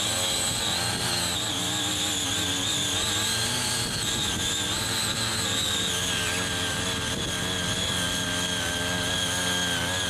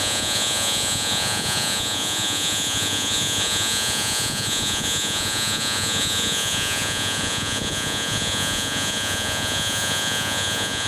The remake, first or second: second